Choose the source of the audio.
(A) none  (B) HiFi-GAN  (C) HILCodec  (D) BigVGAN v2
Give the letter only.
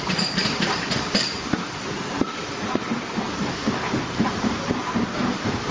D